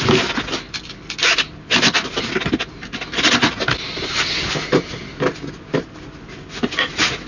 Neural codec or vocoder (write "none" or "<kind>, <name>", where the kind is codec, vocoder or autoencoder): none